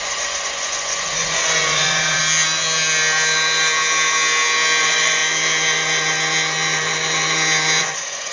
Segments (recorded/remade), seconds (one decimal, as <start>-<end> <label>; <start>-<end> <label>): 0.0-2.2 remade; 2.2-4.8 recorded; 4.8-5.2 remade; 5.2-7.8 recorded; 7.8-8.3 remade